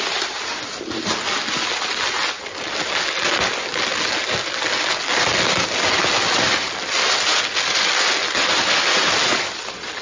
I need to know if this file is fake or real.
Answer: real